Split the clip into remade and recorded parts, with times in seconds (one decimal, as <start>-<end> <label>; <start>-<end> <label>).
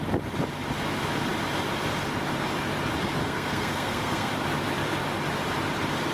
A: 0.0-3.2 recorded; 3.2-4.3 remade; 4.3-6.1 recorded